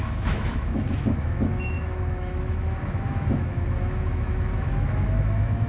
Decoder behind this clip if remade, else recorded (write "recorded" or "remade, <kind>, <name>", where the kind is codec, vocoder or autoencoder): remade, autoencoder, DAC-VAE